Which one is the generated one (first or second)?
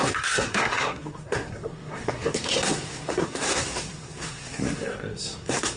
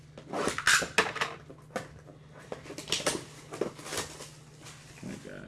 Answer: first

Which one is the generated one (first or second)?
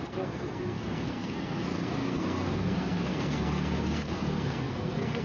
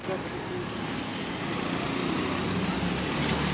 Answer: first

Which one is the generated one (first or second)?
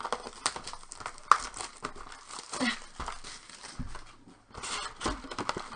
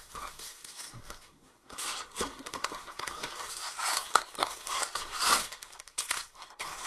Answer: second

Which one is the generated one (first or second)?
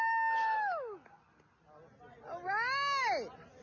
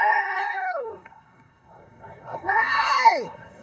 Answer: second